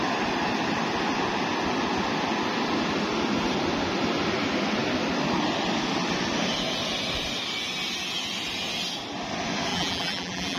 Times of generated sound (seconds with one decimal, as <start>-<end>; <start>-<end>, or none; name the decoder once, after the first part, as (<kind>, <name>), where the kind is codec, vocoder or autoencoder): 9.7-10.6 (vocoder, BigVGAN v2)